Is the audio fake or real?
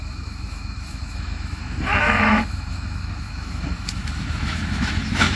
fake